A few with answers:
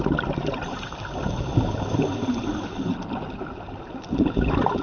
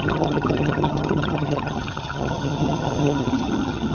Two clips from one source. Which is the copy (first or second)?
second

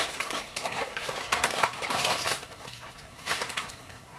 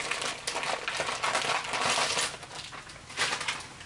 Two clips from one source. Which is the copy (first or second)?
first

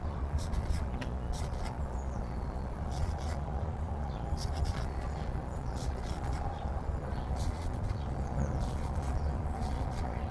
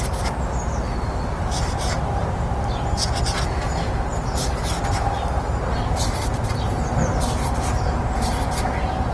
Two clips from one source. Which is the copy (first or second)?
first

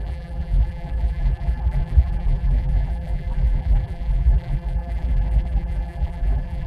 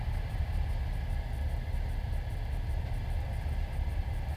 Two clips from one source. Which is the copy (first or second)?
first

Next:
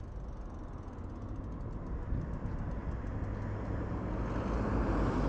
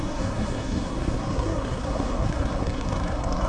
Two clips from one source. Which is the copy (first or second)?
second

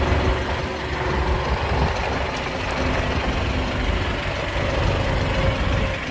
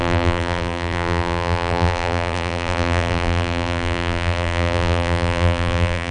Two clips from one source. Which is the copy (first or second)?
second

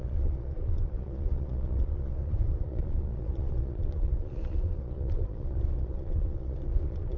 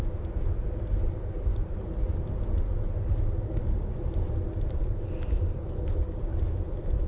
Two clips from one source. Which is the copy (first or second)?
first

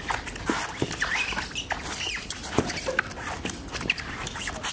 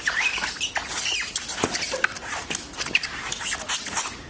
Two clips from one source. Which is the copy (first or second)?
first